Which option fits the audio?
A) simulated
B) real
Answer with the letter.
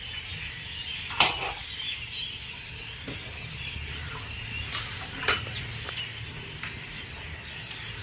B